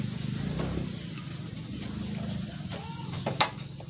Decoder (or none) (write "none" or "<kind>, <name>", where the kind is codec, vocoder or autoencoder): none